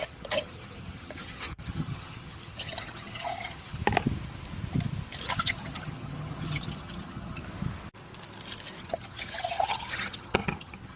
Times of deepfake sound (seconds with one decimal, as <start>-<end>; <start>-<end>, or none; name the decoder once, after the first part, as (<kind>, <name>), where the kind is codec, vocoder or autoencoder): 0.0-3.8 (vocoder, HiFi-GAN); 5.3-7.4; 8.8-11.0